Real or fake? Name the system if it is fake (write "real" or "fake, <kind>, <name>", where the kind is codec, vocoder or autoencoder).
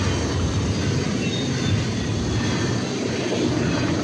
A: real